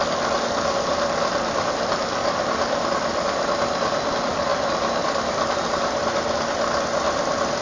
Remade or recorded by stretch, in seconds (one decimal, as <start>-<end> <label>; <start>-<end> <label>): 0.0-7.6 recorded

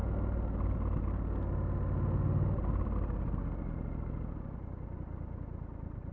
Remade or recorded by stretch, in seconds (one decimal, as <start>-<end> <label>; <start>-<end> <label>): 0.0-6.1 recorded

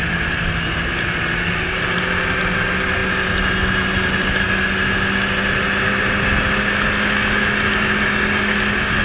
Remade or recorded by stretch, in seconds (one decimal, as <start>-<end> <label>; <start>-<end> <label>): 0.0-9.0 recorded

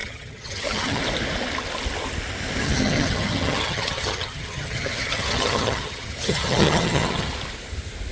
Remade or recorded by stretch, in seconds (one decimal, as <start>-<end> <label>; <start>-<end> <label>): 0.0-1.0 remade; 1.0-2.6 recorded; 2.6-7.3 remade; 7.3-8.1 recorded

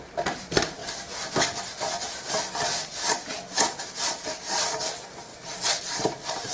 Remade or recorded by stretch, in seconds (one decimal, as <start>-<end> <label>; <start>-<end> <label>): 0.0-0.8 remade; 0.8-3.9 recorded; 3.9-6.5 remade